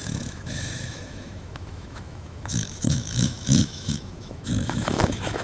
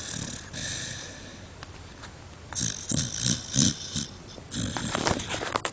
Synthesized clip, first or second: first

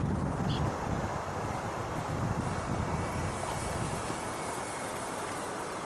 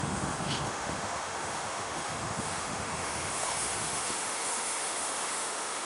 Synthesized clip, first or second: second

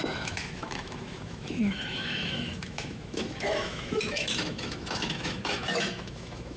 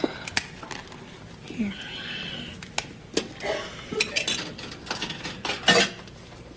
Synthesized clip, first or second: first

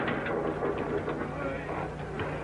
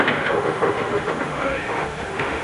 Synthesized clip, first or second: second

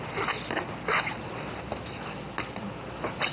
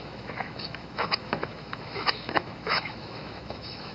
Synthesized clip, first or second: second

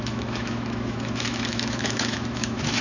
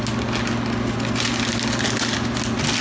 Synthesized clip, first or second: first